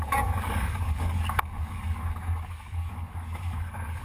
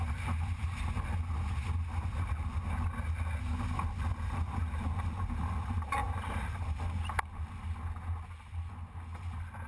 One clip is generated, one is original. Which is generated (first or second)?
first